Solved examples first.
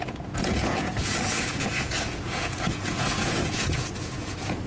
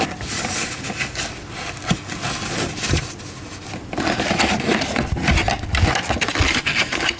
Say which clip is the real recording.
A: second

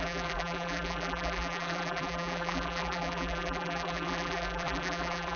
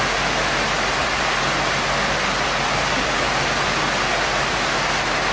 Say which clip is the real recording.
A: second